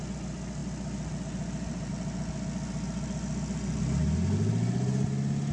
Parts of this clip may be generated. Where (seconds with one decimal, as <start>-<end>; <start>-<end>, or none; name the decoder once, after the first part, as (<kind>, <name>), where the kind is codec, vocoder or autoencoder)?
none